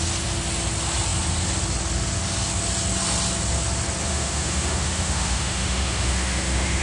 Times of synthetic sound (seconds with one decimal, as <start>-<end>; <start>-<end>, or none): 4.1-6.8